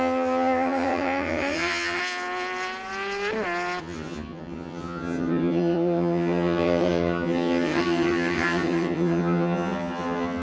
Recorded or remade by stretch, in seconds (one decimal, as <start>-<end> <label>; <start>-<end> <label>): 0.0-2.0 remade; 2.0-3.8 recorded; 3.8-10.4 remade